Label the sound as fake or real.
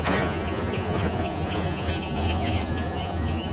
fake